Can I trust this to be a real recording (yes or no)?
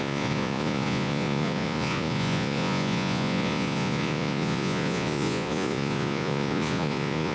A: no